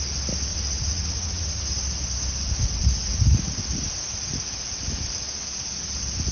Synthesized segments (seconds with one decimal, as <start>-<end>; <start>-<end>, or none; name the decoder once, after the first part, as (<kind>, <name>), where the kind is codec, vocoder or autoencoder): 0.5-1.6 (vocoder, Vocos)